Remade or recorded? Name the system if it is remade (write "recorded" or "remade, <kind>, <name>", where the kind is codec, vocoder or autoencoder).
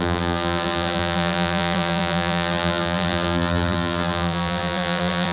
remade, vocoder, BigVGAN v2